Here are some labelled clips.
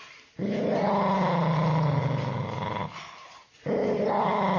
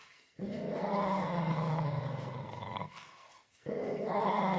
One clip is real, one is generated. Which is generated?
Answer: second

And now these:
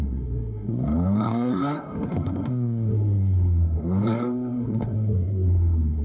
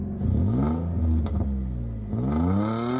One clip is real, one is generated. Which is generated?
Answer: first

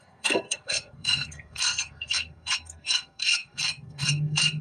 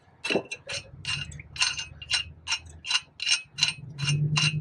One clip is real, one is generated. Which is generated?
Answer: first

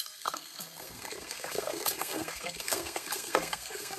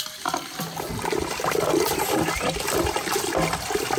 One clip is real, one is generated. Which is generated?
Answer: first